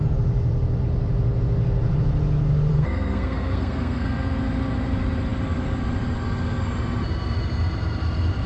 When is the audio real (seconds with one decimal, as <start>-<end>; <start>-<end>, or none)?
0.0-2.7; 4.4-8.5